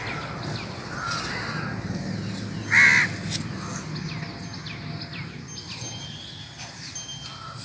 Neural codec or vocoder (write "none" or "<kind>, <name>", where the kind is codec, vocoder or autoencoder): none